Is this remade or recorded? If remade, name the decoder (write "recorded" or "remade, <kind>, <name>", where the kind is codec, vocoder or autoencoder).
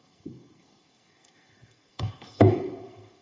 remade, codec, SNAC